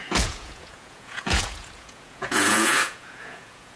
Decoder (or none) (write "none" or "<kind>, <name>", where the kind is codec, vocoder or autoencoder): vocoder, Vocos